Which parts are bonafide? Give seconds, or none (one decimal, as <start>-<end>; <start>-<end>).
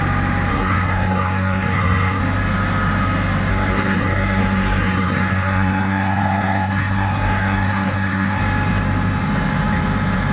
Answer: 0.0-0.5; 2.2-3.5; 8.4-10.3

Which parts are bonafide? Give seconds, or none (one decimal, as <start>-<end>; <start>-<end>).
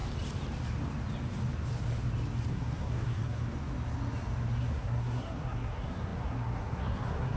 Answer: 0.0-2.5; 3.4-4.6